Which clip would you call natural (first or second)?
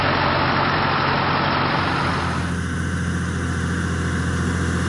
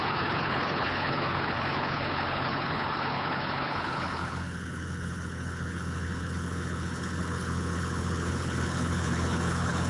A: first